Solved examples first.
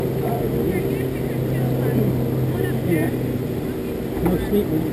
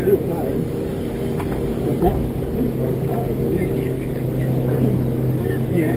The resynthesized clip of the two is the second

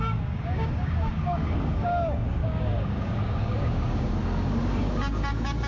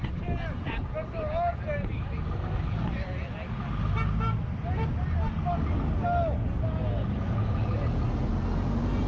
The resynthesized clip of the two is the first